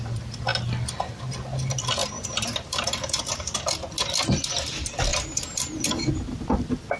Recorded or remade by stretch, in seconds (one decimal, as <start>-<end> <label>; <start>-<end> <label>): 0.0-2.0 recorded; 2.0-3.2 remade; 3.2-5.1 recorded; 5.1-6.1 remade; 6.1-7.0 recorded